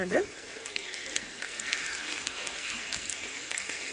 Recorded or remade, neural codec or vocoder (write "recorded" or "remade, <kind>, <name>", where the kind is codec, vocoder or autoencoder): remade, codec, SNAC